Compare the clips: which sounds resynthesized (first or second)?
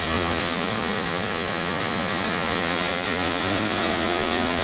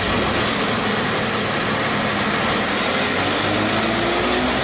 first